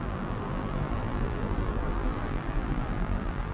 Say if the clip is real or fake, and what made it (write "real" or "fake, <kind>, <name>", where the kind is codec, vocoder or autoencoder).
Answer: fake, vocoder, BigVGAN v2